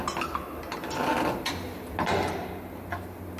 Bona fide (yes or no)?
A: yes